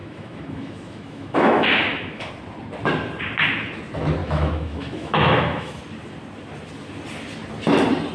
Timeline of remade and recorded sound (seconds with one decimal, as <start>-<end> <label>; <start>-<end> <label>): 0.0-2.3 remade; 2.3-4.2 recorded; 4.2-5.8 remade; 5.8-8.1 recorded